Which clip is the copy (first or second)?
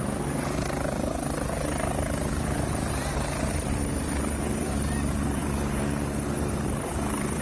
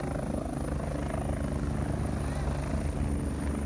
first